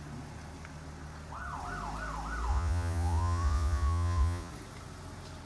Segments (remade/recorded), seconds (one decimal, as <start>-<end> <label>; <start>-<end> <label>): 0.0-2.5 recorded; 2.5-4.5 remade; 4.5-5.5 recorded